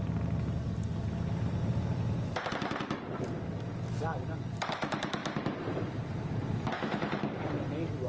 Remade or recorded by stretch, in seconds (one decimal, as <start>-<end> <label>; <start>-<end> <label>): 0.0-5.2 recorded; 5.2-7.6 remade; 7.6-8.1 recorded